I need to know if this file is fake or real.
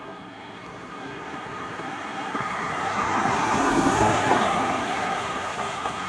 fake